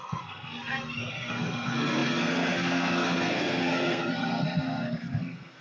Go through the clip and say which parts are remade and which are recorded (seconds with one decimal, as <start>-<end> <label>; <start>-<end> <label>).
0.0-5.6 remade